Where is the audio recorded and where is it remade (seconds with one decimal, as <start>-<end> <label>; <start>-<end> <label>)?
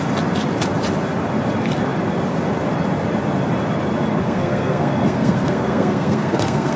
0.0-4.2 recorded; 4.2-6.8 remade